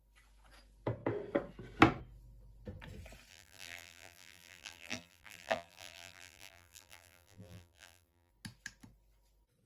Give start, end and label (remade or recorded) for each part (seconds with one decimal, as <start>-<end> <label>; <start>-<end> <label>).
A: 0.0-3.3 recorded; 3.3-8.3 remade; 8.3-9.7 recorded